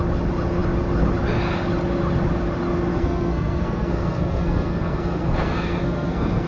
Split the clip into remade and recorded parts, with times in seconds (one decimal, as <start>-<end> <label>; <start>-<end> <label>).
0.0-2.9 recorded; 2.9-6.5 remade